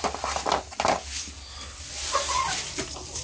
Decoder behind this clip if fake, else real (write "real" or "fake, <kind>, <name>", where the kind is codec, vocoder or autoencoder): real